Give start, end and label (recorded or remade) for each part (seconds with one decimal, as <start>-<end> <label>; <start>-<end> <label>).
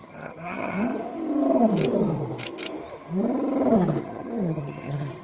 0.0-0.9 remade; 0.9-4.0 recorded; 4.0-5.2 remade